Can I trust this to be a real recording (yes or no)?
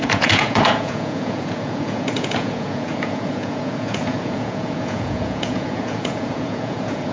no